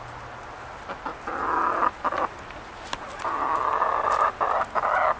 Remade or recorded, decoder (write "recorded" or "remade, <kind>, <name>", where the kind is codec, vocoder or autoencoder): recorded